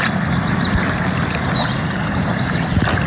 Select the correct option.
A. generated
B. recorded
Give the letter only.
B